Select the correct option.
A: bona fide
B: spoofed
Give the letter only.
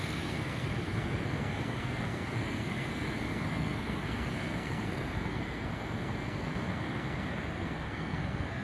B